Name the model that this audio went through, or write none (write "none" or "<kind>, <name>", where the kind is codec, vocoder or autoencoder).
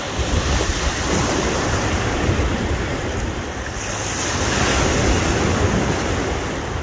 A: none